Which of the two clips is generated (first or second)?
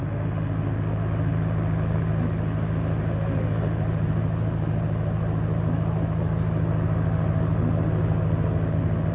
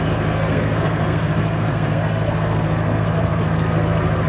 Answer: second